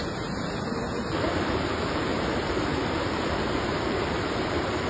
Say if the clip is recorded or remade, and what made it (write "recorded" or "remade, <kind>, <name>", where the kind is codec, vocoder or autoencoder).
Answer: remade, vocoder, BigVGAN v2